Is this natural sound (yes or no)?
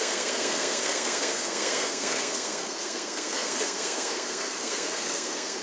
no